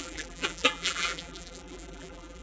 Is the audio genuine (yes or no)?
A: no